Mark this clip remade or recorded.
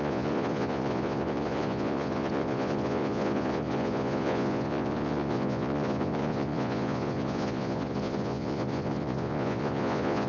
remade